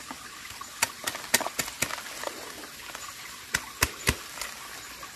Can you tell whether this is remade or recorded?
recorded